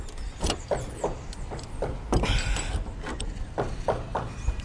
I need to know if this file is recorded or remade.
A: recorded